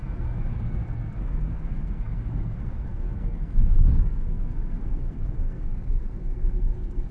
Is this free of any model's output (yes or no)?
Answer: no